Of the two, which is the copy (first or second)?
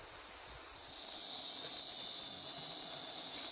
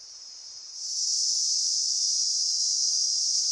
second